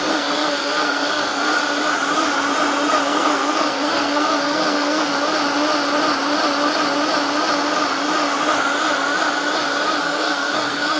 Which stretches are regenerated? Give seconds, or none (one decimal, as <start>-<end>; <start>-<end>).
0.0-1.6; 3.0-5.1; 10.0-11.0